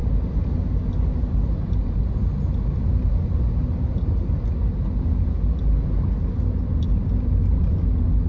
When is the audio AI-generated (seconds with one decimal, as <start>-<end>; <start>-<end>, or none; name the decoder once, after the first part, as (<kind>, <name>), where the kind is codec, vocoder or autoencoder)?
none